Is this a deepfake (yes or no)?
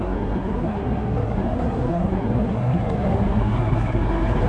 yes